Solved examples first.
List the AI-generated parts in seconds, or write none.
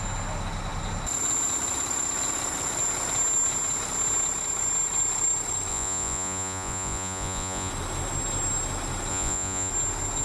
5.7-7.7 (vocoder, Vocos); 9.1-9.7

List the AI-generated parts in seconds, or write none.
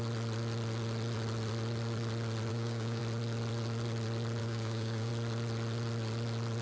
2.5-3.0 (codec, DAC); 4.4-5.1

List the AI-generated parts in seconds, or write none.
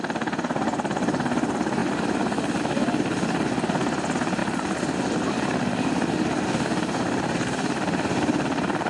none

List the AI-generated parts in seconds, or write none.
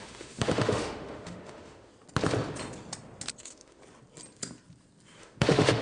0.0-1.9 (autoencoder, DAC-VAE); 3.4-3.8; 5.2-5.8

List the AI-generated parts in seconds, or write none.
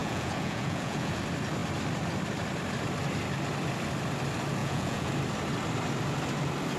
0.0-1.2 (vocoder, Vocos); 4.6-5.1